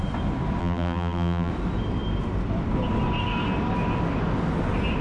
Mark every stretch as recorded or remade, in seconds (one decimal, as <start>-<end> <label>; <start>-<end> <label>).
0.0-0.6 recorded; 0.6-1.5 remade; 1.5-5.0 recorded